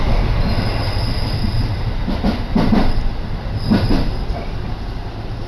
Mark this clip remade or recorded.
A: recorded